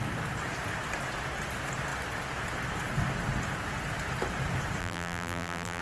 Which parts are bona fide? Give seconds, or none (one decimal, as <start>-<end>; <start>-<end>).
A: 0.0-4.8